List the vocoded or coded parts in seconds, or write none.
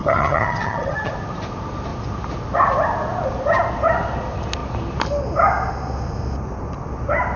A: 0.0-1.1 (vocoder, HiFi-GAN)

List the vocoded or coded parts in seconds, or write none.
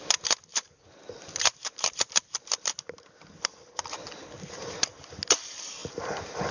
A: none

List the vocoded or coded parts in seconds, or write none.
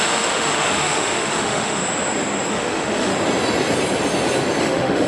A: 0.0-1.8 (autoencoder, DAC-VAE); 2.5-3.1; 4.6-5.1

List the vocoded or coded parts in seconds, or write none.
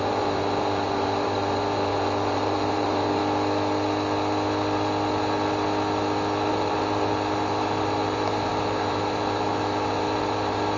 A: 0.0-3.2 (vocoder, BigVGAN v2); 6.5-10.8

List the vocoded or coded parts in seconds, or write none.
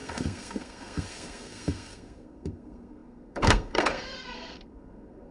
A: 0.0-5.3 (codec, SNAC)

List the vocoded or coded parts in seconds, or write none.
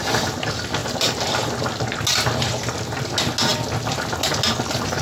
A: 0.8-1.3 (vocoder, BigVGAN v2)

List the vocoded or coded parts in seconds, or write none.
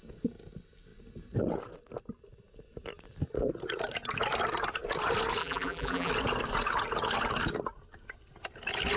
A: 5.4-6.1 (vocoder, BigVGAN v2)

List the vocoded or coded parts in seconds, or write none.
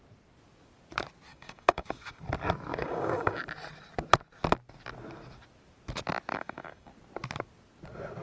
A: 1.3-2.2 (codec, DAC); 2.8-3.4; 6.3-6.9